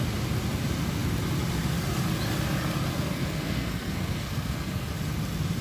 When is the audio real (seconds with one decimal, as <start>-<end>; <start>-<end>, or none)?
0.0-2.9; 4.9-5.6